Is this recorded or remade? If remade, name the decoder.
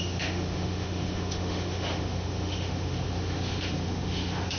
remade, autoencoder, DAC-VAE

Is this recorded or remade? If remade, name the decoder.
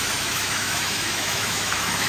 remade, autoencoder, DAC-VAE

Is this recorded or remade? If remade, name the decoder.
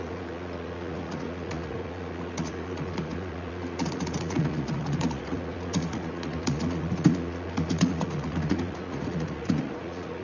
remade, vocoder, Vocos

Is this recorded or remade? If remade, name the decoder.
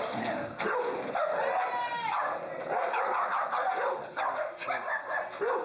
recorded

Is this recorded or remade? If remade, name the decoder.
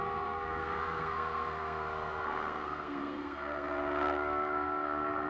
remade, codec, SNAC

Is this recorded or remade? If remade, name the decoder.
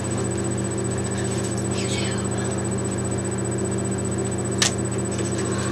recorded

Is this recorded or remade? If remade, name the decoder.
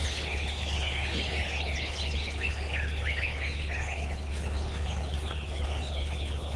remade, codec, HILCodec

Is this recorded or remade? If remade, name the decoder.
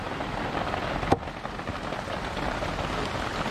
recorded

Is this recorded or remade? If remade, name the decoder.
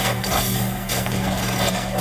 remade, codec, SNAC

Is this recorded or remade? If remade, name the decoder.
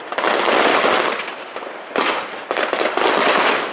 recorded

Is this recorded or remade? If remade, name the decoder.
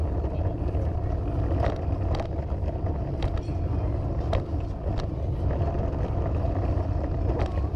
recorded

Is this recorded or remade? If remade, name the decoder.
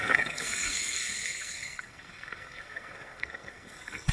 remade, codec, SNAC